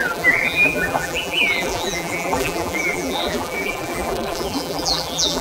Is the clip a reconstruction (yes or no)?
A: yes